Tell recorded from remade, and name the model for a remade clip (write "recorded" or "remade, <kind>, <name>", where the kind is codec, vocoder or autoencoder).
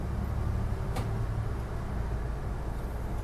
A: recorded